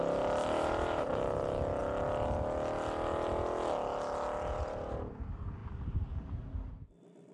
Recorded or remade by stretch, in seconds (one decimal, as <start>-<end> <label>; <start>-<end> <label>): 0.0-1.8 remade; 1.8-4.6 recorded; 4.6-7.3 remade